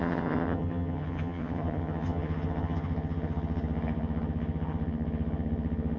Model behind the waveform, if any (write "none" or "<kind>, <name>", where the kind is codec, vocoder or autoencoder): vocoder, HiFi-GAN